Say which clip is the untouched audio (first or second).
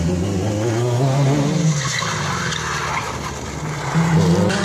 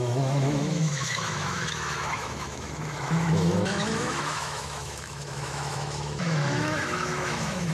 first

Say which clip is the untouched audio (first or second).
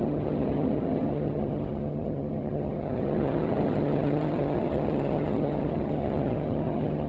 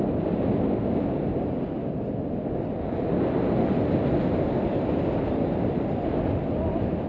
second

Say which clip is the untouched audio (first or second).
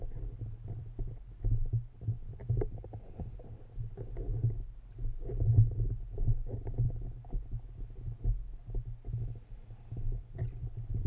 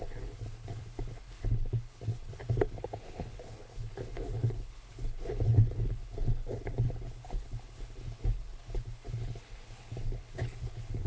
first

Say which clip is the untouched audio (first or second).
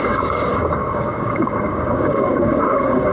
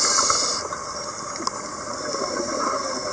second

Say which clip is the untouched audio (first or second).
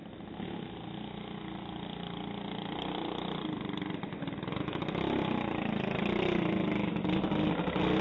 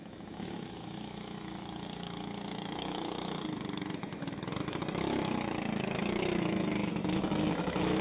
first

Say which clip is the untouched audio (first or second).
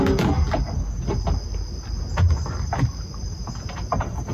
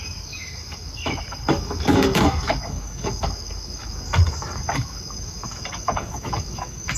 first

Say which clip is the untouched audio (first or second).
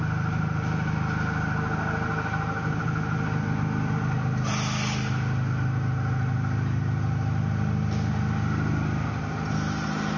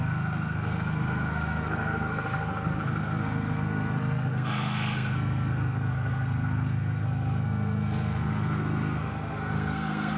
first